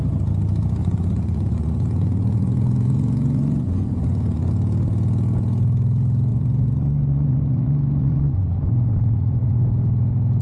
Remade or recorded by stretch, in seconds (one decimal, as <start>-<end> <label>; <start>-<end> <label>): 0.0-0.8 recorded; 0.8-4.5 remade; 4.5-6.3 recorded; 6.3-9.6 remade; 9.6-10.4 recorded